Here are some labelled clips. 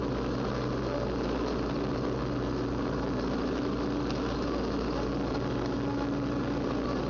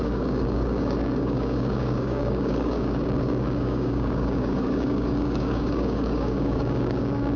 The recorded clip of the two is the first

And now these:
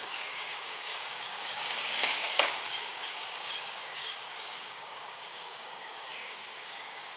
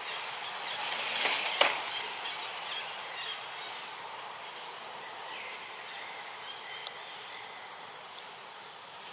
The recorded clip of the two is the second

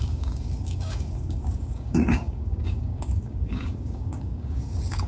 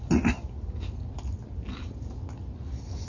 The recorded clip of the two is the second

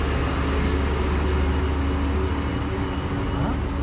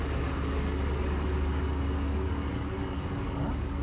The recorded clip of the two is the first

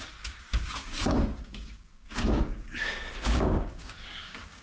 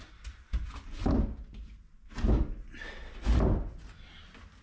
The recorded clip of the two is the second